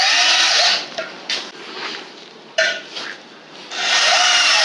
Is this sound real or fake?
real